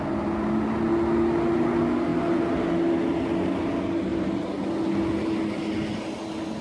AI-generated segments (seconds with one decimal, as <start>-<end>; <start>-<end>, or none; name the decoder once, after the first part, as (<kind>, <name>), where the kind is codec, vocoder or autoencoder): none